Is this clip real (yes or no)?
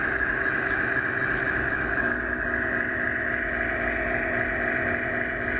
yes